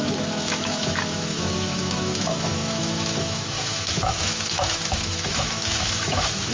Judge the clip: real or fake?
fake